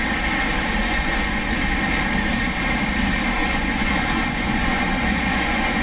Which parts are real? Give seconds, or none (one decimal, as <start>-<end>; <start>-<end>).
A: 0.0-0.8; 1.4-3.4